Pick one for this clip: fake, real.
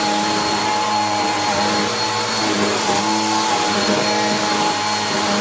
real